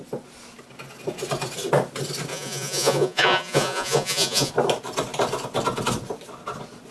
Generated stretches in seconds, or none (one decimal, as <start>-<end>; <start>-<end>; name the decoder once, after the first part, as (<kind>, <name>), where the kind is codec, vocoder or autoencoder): 2.3-4.5 (vocoder, Vocos)